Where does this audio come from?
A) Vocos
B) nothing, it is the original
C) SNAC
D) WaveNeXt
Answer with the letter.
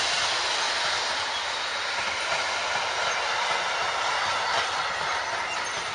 B